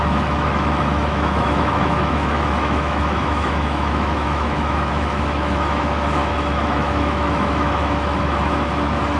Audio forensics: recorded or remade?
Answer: remade